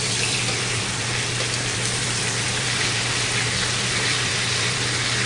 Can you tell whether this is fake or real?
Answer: fake